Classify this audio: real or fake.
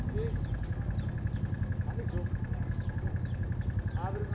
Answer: real